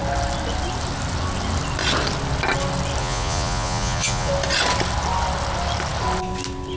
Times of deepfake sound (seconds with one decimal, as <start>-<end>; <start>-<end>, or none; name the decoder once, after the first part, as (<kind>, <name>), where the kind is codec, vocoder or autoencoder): 3.0-4.3 (vocoder, Vocos)